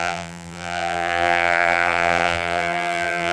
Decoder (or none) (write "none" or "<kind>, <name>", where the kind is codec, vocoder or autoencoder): vocoder, BigVGAN v2